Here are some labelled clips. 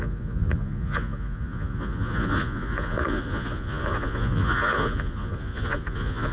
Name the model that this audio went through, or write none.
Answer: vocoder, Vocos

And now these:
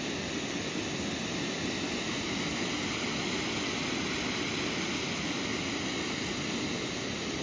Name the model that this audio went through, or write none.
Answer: none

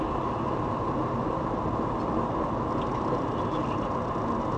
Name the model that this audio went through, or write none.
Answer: none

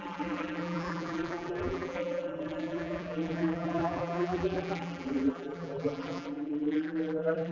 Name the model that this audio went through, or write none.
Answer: vocoder, BigVGAN v2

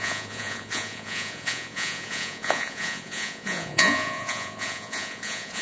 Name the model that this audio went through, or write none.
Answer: vocoder, Vocos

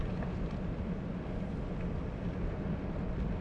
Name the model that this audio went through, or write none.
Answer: vocoder, BigVGAN v2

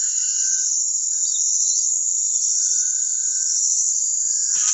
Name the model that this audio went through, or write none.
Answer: none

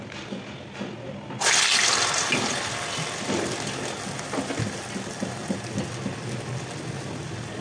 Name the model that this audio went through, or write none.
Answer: none